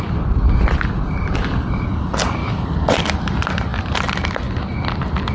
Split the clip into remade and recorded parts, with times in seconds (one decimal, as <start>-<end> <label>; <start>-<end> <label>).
0.0-5.3 recorded